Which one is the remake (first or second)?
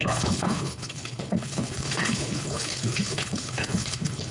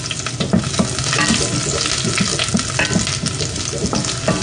first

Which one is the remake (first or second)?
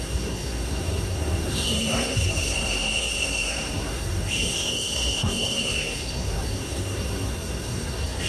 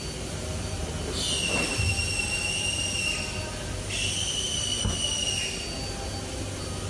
first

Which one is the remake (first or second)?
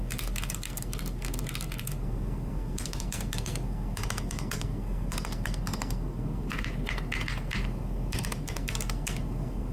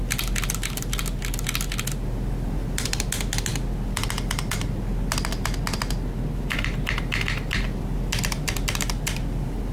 first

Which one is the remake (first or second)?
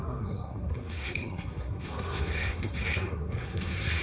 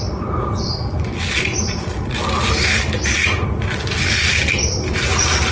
first